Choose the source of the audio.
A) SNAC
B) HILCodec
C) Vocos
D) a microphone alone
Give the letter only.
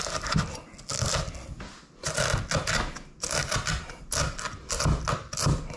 D